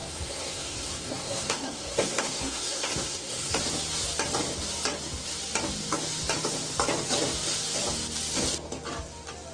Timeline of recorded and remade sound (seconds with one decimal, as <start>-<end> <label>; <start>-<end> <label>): 0.0-3.6 remade; 3.6-9.5 recorded